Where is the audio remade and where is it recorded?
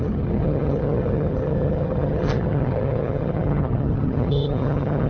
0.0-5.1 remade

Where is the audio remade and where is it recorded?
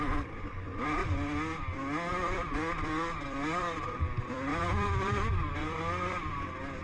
0.0-1.0 remade; 1.0-2.1 recorded; 2.1-6.8 remade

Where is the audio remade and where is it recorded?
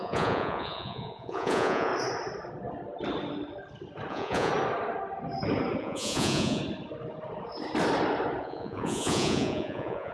0.0-1.9 remade; 1.9-4.1 recorded; 4.1-4.5 remade; 4.5-5.8 recorded; 5.8-6.6 remade; 6.6-8.4 recorded; 8.4-10.1 remade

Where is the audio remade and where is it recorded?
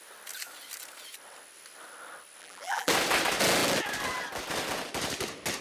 0.0-2.4 recorded; 2.4-2.9 remade; 2.9-5.6 recorded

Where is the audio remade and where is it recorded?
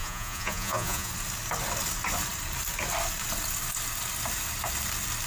0.0-1.1 remade; 1.1-5.3 recorded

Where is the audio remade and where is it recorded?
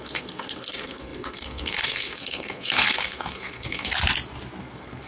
0.0-3.9 remade; 3.9-4.6 recorded; 4.6-5.1 remade